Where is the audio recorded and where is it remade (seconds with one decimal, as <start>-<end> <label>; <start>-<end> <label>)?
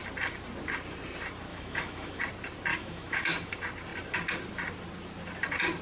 0.0-1.5 recorded; 1.5-2.2 remade; 2.2-2.7 recorded; 2.7-3.5 remade; 3.5-5.8 recorded